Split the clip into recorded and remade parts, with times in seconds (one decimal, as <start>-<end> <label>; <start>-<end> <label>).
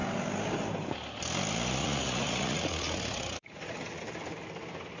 0.0-1.8 recorded; 1.8-4.0 remade; 4.0-5.0 recorded